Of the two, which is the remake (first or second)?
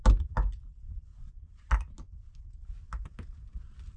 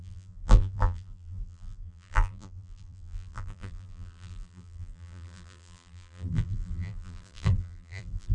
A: second